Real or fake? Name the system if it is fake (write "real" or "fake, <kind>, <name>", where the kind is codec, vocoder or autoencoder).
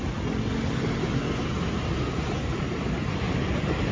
real